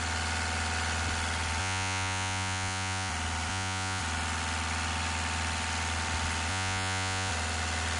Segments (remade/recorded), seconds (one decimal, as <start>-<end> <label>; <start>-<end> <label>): 0.0-1.6 recorded; 1.6-3.1 remade; 3.1-3.5 recorded; 3.5-4.0 remade; 4.0-6.5 recorded; 6.5-7.3 remade; 7.3-8.0 recorded